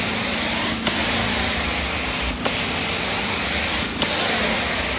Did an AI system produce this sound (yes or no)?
no